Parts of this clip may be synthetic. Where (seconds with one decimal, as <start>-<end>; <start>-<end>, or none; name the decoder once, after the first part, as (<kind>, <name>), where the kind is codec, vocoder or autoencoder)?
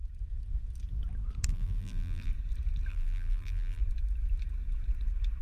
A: 1.5-2.3 (vocoder, BigVGAN v2); 2.9-3.8